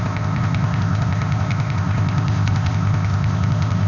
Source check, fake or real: fake